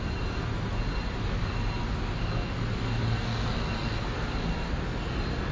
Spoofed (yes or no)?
no